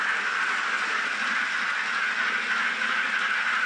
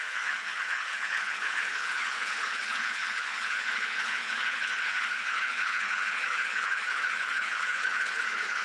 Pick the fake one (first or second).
second